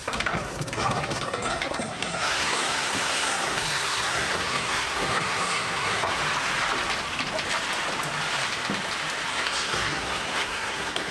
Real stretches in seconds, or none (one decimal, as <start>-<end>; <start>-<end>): 6.2-9.3